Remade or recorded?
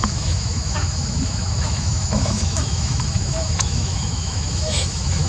remade